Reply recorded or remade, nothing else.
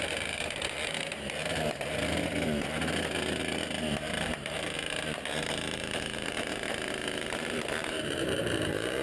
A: remade